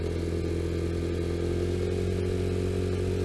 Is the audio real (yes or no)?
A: yes